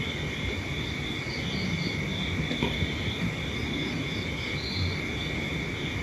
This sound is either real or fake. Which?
real